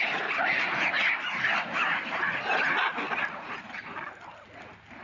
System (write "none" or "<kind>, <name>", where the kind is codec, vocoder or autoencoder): none